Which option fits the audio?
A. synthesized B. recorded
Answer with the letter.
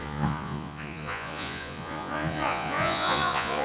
A